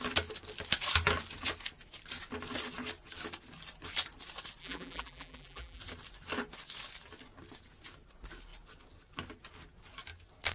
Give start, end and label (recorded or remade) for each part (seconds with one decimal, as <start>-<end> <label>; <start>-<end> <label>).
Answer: 0.0-4.6 recorded; 4.6-5.8 remade; 5.8-10.5 recorded